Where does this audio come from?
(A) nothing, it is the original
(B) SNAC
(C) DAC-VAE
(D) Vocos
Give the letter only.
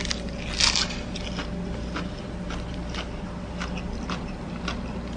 A